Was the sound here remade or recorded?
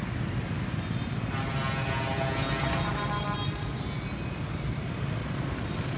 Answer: recorded